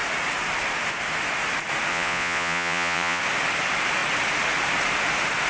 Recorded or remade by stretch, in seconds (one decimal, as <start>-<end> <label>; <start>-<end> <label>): 0.0-1.9 recorded; 1.9-3.2 remade; 3.2-5.5 recorded